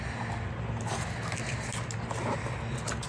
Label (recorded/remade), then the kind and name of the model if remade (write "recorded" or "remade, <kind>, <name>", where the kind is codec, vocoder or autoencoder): recorded